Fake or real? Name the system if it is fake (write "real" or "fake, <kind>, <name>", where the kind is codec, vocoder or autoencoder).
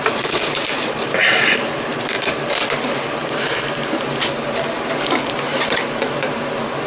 fake, vocoder, BigVGAN v2